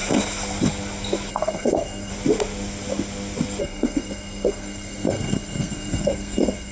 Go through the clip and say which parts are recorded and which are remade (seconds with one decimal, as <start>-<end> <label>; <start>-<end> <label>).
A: 0.0-1.3 recorded; 1.3-2.1 remade; 2.1-3.6 recorded; 3.6-6.7 remade